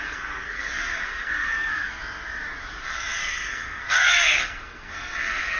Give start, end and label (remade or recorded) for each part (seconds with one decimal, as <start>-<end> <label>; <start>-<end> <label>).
0.0-2.0 remade; 2.0-2.8 recorded; 2.8-5.6 remade